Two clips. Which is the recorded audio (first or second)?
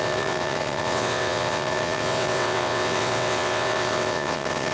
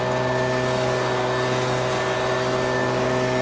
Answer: second